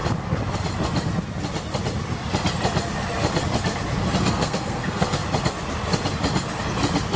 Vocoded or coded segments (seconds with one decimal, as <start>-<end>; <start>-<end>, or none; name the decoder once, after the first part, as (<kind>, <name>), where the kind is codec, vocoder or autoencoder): 4.3-5.2 (codec, SNAC)